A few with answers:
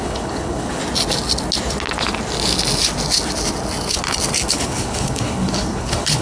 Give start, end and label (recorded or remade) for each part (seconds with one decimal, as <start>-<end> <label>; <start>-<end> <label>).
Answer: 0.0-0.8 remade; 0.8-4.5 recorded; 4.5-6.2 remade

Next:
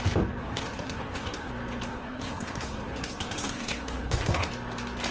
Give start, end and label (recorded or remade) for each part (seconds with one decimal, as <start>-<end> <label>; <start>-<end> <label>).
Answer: 0.0-0.4 recorded; 0.4-1.5 remade; 1.5-1.9 recorded; 1.9-4.5 remade; 4.5-5.1 recorded

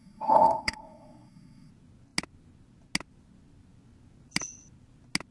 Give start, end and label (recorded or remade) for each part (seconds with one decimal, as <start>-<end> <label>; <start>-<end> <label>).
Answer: 0.0-1.7 remade; 1.7-5.3 recorded